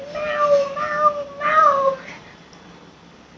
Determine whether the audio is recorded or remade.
recorded